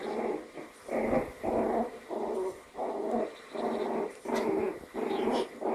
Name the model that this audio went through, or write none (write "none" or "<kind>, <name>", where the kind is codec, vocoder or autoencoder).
none